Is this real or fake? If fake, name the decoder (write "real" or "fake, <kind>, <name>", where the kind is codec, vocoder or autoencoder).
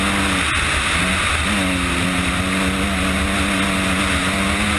real